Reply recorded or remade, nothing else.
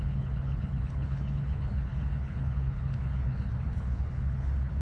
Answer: remade